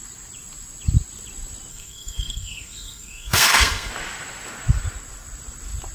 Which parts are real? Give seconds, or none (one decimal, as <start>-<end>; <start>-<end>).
0.0-1.7; 3.9-5.9